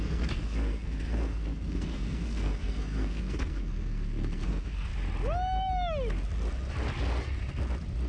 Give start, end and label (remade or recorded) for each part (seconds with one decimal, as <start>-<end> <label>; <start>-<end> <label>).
0.0-4.9 remade; 4.9-8.1 recorded